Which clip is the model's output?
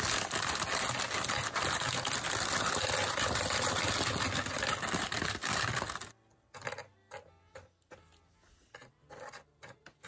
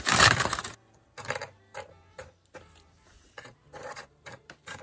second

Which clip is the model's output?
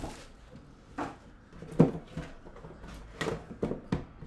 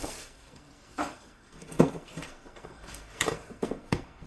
second